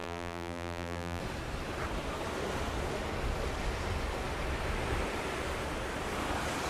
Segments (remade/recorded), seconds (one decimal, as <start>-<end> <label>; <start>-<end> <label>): 0.0-1.2 remade; 1.2-6.7 recorded